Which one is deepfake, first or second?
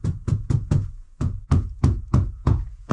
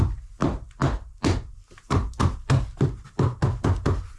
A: first